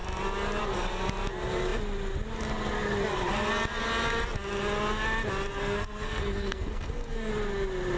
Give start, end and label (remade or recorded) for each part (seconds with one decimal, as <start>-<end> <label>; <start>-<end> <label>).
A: 0.0-5.5 recorded; 5.5-7.3 remade; 7.3-8.0 recorded